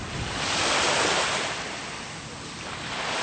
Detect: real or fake real